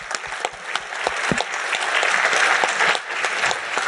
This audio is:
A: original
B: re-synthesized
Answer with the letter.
A